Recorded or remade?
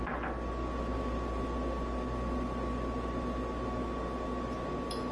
recorded